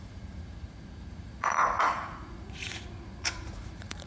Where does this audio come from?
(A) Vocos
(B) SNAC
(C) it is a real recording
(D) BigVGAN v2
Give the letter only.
A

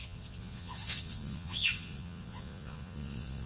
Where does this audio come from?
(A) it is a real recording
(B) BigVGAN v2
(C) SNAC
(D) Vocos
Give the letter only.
D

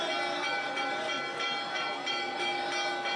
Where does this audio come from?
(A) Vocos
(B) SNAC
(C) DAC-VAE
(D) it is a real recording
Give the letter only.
D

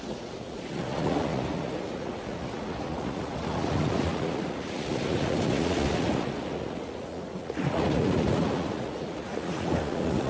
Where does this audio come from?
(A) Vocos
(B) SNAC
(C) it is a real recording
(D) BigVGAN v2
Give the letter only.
A